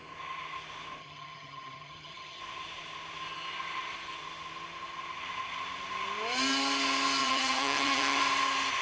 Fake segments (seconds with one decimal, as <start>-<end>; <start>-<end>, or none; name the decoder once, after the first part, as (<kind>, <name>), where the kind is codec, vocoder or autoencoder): 1.0-2.4 (vocoder, HiFi-GAN); 7.2-8.2